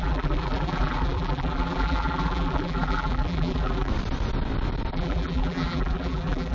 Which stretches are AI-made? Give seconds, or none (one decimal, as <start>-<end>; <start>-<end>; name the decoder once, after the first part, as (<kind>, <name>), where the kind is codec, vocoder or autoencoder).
0.0-3.9 (vocoder, BigVGAN v2); 4.9-6.5